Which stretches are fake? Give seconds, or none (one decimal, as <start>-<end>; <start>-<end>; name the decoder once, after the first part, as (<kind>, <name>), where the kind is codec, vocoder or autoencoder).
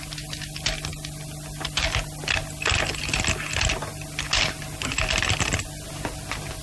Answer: none